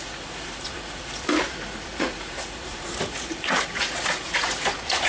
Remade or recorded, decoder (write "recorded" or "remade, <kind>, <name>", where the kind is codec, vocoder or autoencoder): remade, vocoder, Vocos